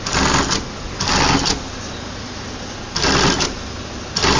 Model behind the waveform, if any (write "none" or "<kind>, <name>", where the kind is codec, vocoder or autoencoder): none